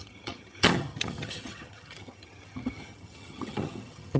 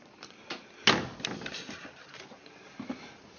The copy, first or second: first